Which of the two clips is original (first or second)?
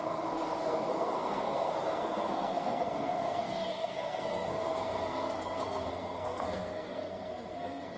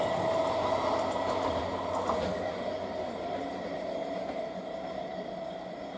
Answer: second